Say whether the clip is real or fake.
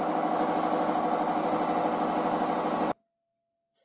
real